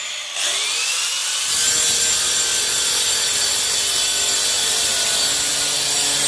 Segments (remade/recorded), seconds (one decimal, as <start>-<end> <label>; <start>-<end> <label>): 0.0-1.2 recorded; 1.2-1.8 remade; 1.8-4.6 recorded; 4.6-5.3 remade; 5.3-6.3 recorded